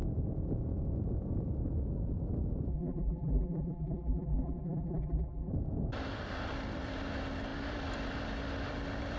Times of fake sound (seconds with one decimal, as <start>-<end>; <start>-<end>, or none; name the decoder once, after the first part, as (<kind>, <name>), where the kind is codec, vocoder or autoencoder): 2.7-5.5 (vocoder, BigVGAN v2)